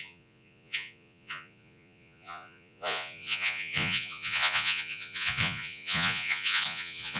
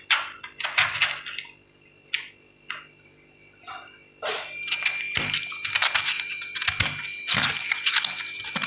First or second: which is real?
second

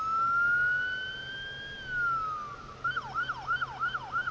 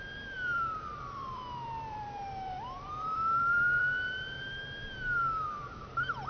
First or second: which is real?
first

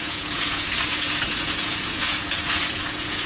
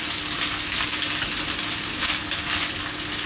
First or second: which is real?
second